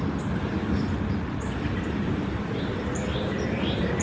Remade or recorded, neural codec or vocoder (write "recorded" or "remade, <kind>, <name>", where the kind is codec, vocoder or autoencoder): recorded